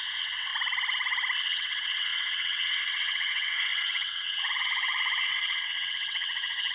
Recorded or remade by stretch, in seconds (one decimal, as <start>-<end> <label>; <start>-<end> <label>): 0.0-0.5 remade; 0.5-1.4 recorded; 1.4-6.7 remade